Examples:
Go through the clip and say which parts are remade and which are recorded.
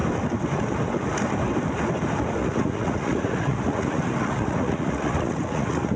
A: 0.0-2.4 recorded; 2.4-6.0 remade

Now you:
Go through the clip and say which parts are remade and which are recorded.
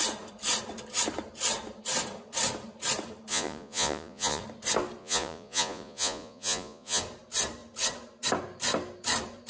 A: 0.0-3.3 recorded; 3.3-4.4 remade; 4.4-5.0 recorded; 5.0-7.0 remade; 7.0-9.5 recorded